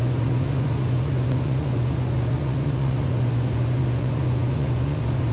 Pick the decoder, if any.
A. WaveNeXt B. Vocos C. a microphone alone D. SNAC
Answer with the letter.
B